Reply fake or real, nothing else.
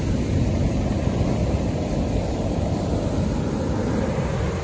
real